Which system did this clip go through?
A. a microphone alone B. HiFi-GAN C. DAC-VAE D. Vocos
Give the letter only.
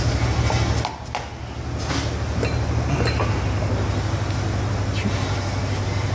A